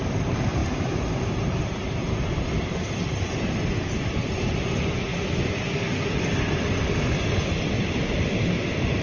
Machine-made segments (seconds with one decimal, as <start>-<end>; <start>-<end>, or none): 0.0-5.1; 7.8-9.0